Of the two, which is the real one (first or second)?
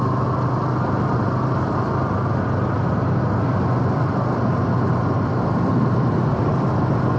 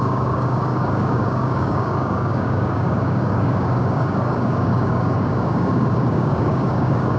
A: first